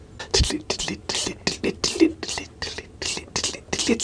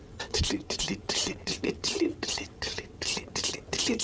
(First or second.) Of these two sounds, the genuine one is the first